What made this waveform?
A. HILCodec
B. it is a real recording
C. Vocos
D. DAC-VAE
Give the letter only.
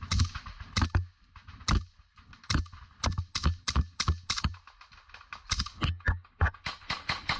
B